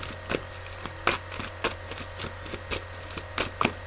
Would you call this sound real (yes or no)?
yes